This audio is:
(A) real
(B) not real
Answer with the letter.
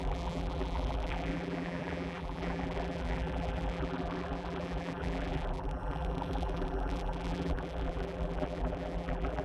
B